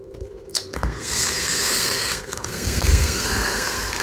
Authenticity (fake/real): fake